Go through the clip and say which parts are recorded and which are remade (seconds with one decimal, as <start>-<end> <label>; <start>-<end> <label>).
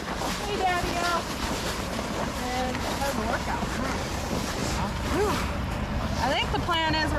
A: 0.0-1.1 recorded; 1.1-2.8 remade; 2.8-7.2 recorded